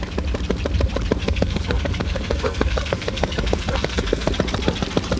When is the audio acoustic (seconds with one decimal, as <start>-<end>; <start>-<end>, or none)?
0.0-1.2; 4.3-5.2